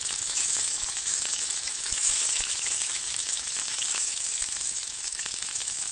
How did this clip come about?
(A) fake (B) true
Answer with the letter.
A